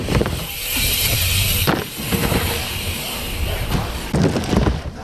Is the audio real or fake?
real